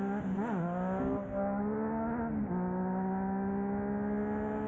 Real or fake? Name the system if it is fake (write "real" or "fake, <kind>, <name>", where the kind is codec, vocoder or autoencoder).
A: real